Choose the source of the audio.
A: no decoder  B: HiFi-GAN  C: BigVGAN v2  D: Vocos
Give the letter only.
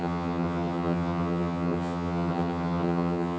B